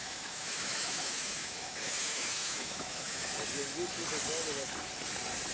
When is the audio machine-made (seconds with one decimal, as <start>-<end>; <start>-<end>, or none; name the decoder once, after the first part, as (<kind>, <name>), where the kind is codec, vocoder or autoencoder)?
0.0-3.3 (autoencoder, DAC-VAE)